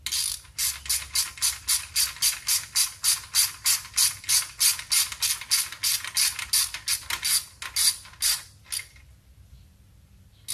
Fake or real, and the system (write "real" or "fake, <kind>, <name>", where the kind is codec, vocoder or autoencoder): real